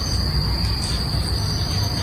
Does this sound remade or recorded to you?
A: recorded